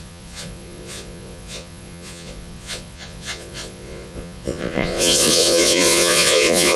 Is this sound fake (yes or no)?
yes